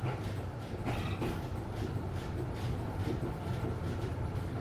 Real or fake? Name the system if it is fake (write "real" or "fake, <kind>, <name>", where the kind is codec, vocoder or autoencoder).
real